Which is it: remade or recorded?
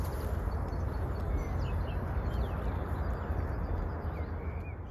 recorded